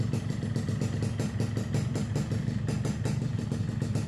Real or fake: real